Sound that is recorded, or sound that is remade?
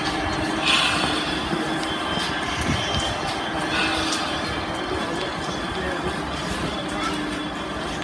recorded